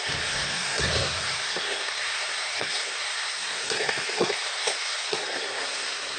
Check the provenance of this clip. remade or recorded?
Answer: remade